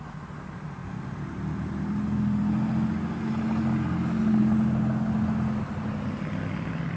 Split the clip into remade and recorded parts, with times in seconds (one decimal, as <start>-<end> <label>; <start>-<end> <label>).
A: 0.0-7.0 recorded